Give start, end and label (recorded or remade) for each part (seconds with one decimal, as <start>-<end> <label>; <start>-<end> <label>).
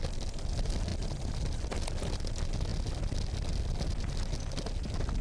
0.0-5.2 recorded